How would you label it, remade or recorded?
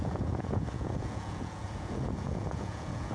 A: remade